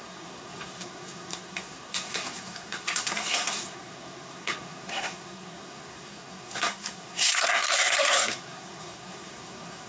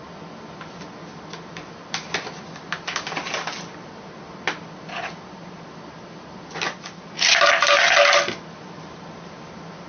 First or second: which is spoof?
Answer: first